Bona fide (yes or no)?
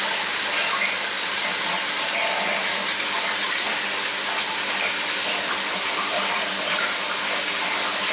yes